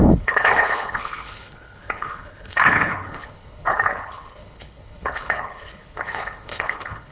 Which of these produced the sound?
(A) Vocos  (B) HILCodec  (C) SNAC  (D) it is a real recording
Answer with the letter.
B